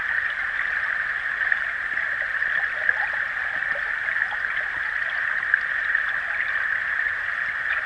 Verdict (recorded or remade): recorded